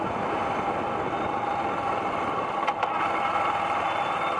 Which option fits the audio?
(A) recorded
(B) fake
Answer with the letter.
A